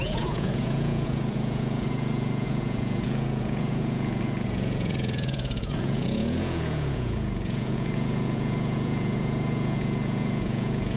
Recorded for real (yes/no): no